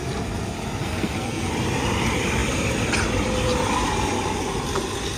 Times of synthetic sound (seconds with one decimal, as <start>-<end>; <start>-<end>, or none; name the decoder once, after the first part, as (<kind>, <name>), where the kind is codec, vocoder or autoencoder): 0.8-1.5 (codec, SNAC)